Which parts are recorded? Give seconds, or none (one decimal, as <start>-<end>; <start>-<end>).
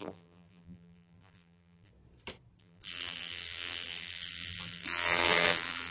1.9-2.6